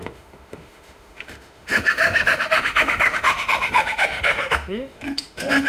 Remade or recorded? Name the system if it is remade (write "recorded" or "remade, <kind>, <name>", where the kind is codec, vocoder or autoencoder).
remade, autoencoder, DAC-VAE